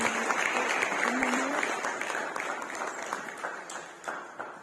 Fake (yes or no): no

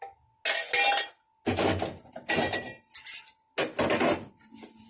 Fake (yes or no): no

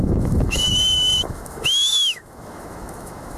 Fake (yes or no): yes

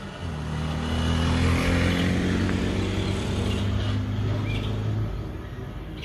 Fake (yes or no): no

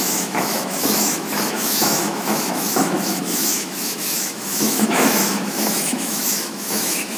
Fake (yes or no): yes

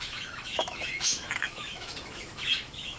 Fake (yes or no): yes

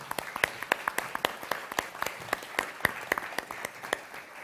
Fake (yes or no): no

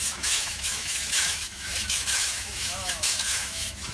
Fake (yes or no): yes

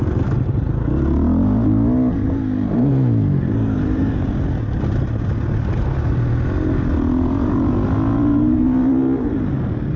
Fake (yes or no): no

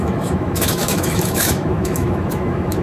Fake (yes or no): yes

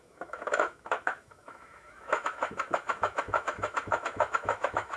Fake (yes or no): yes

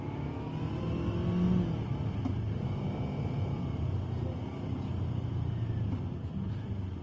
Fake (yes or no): no